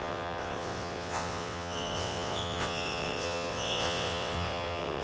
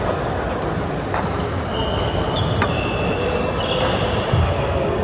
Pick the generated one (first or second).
first